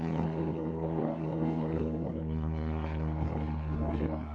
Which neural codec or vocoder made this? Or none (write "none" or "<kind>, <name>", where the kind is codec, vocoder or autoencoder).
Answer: codec, SNAC